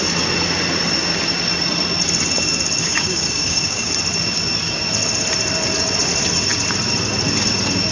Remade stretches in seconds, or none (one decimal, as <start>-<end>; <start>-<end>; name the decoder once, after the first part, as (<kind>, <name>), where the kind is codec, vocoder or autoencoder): 2.8-3.9 (codec, DAC)

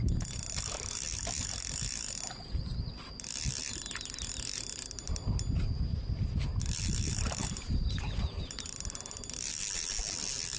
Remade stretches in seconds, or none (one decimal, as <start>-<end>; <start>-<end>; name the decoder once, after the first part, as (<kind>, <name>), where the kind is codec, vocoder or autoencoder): none

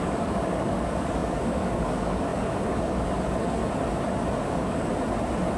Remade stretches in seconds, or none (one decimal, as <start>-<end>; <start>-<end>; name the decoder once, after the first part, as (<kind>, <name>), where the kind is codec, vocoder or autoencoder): 0.0-3.6 (codec, DAC); 4.4-4.9

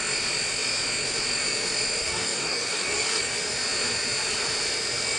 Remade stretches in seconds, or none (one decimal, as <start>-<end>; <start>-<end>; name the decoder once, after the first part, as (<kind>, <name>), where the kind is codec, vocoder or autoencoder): 2.0-3.2 (codec, DAC)

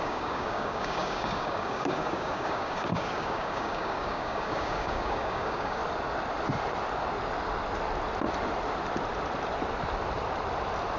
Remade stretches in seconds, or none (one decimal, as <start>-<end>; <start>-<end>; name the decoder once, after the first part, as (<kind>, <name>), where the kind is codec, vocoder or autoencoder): 0.0-5.8 (codec, DAC)